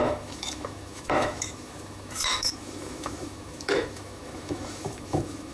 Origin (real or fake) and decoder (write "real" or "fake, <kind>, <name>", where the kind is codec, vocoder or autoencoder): fake, autoencoder, DAC-VAE